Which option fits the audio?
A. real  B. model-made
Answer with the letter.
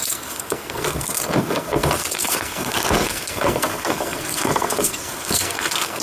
B